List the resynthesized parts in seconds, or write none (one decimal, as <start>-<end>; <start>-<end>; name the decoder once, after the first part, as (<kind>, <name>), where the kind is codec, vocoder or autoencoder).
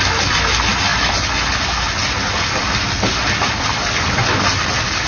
none